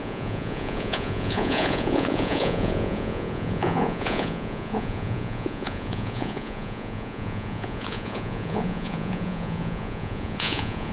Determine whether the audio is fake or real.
fake